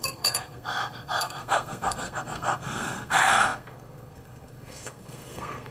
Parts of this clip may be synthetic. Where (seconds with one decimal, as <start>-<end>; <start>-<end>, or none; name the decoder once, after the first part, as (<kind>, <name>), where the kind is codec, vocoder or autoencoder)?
0.0-5.7 (codec, SNAC)